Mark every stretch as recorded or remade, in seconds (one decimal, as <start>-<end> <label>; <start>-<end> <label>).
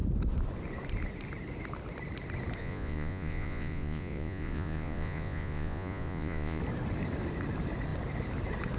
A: 0.0-2.6 recorded; 2.6-6.6 remade; 6.6-8.8 recorded